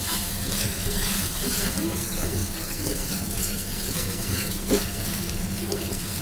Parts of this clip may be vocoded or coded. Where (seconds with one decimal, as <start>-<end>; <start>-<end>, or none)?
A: 0.0-6.2